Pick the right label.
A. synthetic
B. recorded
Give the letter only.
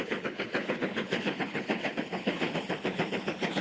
A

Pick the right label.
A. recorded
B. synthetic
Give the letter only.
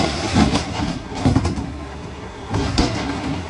B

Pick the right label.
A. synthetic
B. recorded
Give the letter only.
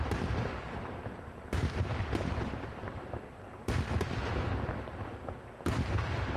B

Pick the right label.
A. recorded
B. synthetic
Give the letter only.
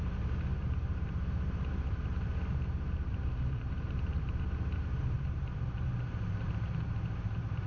B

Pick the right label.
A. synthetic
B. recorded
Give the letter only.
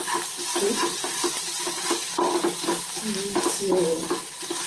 B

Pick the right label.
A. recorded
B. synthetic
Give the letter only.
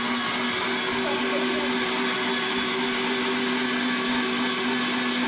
A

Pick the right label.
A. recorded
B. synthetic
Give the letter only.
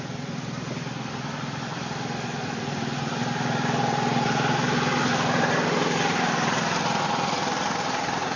A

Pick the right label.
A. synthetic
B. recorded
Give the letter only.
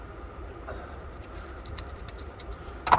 B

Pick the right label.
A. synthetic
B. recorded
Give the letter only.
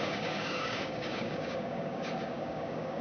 A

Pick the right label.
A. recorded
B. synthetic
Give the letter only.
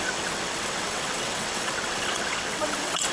B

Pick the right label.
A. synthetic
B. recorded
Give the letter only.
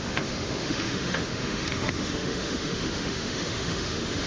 A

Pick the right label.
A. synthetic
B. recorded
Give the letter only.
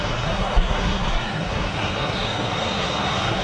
A